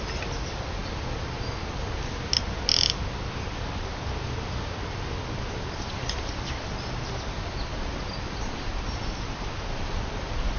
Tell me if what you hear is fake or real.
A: real